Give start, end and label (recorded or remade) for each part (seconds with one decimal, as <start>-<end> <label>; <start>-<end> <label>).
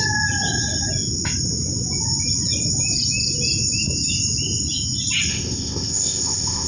0.0-5.3 recorded; 5.3-6.7 remade